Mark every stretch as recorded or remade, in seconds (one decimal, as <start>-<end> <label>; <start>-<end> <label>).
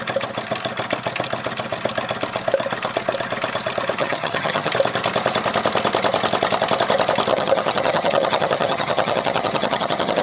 0.0-4.0 recorded; 4.0-4.7 remade; 4.7-7.3 recorded; 7.3-10.2 remade